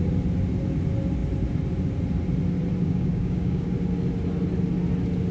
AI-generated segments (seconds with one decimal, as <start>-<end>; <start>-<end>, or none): 2.8-3.7